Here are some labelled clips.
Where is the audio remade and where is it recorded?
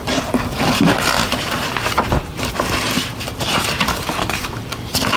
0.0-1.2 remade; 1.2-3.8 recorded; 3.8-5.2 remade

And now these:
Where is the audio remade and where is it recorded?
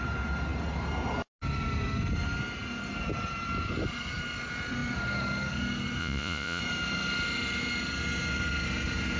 0.0-6.0 recorded; 6.0-6.6 remade; 6.6-9.2 recorded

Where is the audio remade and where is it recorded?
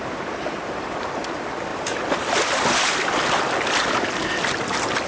0.0-5.1 recorded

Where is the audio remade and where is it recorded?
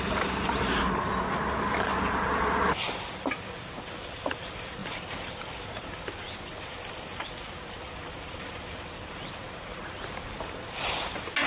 0.0-11.5 recorded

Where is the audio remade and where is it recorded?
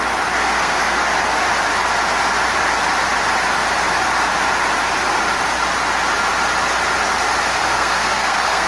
0.0-0.4 recorded; 0.4-1.0 remade; 1.0-7.6 recorded; 7.6-8.7 remade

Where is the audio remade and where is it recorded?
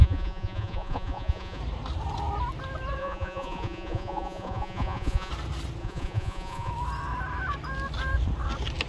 0.0-1.6 remade; 1.6-3.0 recorded; 3.0-5.3 remade; 5.3-5.8 recorded; 5.8-6.7 remade; 6.7-8.9 recorded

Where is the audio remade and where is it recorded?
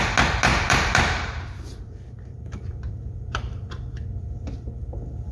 0.0-0.5 recorded; 0.5-3.7 remade; 3.7-5.3 recorded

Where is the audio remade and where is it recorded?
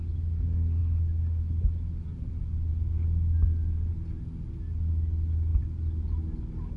0.0-6.8 recorded